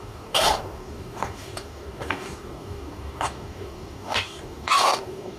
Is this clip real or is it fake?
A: fake